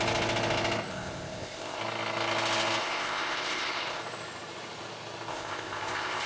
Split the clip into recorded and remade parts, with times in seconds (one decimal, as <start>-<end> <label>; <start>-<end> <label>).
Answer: 0.0-0.9 recorded; 0.9-1.8 remade; 1.8-2.8 recorded; 2.8-4.0 remade; 4.0-5.3 recorded; 5.3-6.3 remade